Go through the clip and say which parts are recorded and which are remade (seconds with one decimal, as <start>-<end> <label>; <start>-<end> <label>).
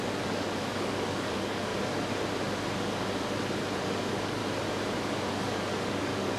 0.0-1.7 remade; 1.7-3.8 recorded; 3.8-4.4 remade; 4.4-5.3 recorded; 5.3-6.4 remade